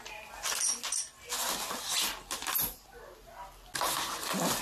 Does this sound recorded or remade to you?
recorded